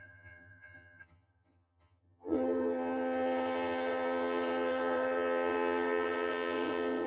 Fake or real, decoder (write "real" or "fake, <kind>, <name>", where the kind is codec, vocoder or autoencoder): fake, vocoder, HiFi-GAN